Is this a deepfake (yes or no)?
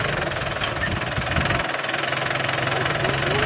no